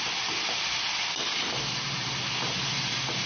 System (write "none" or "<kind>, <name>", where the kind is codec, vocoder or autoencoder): none